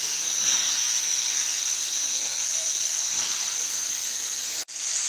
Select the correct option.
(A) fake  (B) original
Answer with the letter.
A